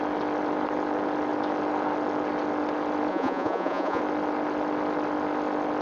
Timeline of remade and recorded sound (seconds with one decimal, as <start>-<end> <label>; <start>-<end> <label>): 0.0-3.1 recorded; 3.1-4.0 remade; 4.0-5.8 recorded